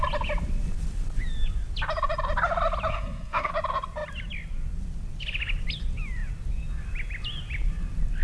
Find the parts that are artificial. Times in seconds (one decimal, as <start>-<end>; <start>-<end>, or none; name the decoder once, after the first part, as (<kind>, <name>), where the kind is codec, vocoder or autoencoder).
2.9-3.5 (codec, SNAC)